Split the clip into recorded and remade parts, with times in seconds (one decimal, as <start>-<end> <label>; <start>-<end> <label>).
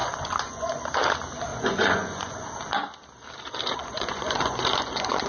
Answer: 0.0-0.8 remade; 0.8-1.5 recorded; 1.5-2.5 remade; 2.5-3.8 recorded; 3.8-5.3 remade